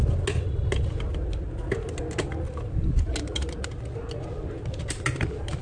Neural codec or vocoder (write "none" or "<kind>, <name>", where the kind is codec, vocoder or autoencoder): none